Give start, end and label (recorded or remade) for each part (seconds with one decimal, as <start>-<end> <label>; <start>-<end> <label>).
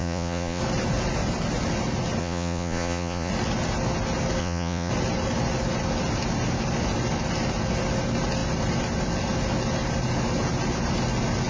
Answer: 0.0-0.6 remade; 0.6-2.2 recorded; 2.2-3.3 remade; 3.3-4.4 recorded; 4.4-4.9 remade; 4.9-11.5 recorded